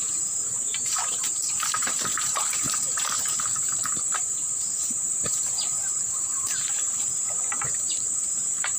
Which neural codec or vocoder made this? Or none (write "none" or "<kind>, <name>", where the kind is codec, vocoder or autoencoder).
vocoder, BigVGAN v2